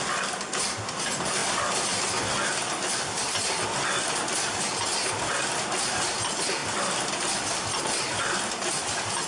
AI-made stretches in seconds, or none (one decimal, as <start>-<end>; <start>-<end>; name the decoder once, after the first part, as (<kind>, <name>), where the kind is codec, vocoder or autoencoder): none